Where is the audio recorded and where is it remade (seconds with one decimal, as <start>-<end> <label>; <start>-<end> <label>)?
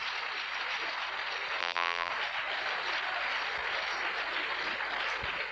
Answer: 0.0-1.6 recorded; 1.6-2.1 remade; 2.1-5.5 recorded